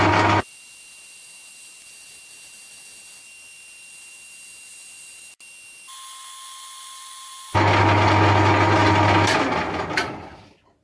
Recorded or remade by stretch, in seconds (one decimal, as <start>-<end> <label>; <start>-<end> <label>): 0.0-10.8 recorded

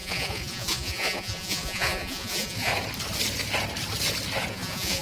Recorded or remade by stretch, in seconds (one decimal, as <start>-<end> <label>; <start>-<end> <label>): 0.0-2.7 remade; 2.7-4.5 recorded; 4.5-5.0 remade

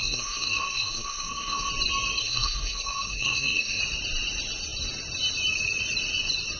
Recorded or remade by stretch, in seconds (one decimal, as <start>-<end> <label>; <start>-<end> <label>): 0.0-1.7 remade; 1.7-2.2 recorded; 2.2-3.8 remade; 3.8-6.6 recorded

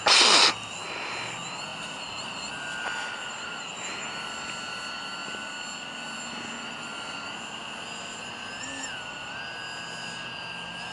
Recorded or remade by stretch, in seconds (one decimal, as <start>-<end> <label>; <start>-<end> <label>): 0.0-1.7 recorded; 1.7-2.5 remade; 2.5-10.9 recorded

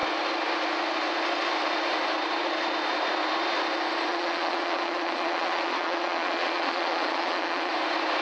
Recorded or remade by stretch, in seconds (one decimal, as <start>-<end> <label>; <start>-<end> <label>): 0.0-4.1 recorded; 4.1-7.7 remade; 7.7-8.2 recorded

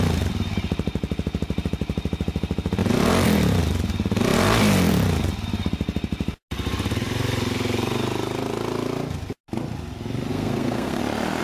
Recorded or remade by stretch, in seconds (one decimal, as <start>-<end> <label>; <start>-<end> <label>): 0.0-10.3 recorded; 10.3-11.0 remade; 11.0-11.4 recorded

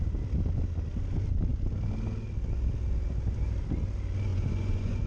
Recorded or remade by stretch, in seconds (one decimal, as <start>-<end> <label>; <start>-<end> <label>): 0.0-4.3 recorded; 4.3-5.1 remade

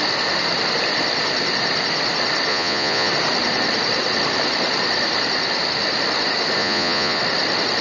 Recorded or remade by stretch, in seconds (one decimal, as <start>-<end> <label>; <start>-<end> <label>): 0.0-2.5 recorded; 2.5-3.1 remade; 3.1-6.6 recorded; 6.6-7.2 remade; 7.2-7.8 recorded